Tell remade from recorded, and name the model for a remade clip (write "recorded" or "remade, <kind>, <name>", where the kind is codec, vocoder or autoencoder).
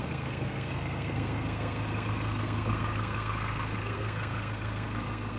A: remade, codec, SNAC